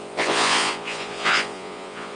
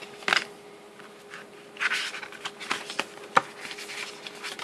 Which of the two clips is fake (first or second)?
first